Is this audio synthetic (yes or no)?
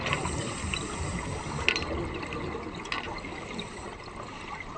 no